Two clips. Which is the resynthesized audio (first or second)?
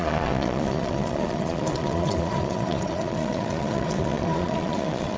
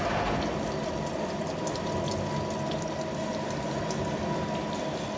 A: first